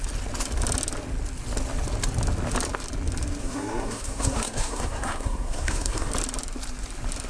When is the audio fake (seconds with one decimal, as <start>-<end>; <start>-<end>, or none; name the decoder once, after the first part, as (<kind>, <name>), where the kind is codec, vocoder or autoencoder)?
3.4-6.1 (codec, SNAC)